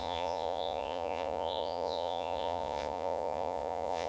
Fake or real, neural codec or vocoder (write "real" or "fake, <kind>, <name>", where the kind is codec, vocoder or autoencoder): fake, vocoder, Vocos